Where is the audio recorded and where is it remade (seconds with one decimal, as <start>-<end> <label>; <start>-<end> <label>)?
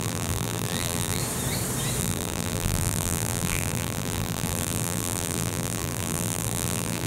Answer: 0.0-1.2 remade; 1.2-2.0 recorded; 2.0-7.1 remade